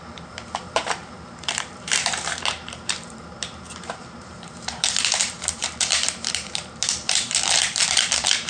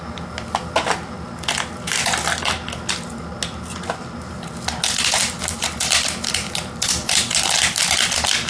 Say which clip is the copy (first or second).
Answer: first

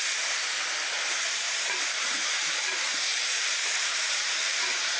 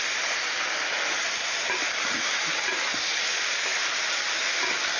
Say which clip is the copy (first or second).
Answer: first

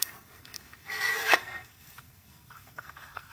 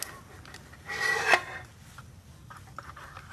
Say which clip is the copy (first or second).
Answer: first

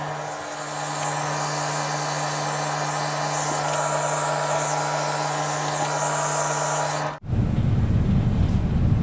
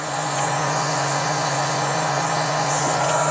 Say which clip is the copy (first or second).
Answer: second